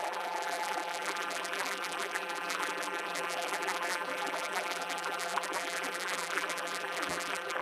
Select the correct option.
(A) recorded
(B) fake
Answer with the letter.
B